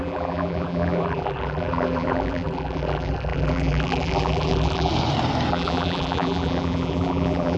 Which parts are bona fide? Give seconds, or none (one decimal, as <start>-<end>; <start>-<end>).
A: 4.9-5.5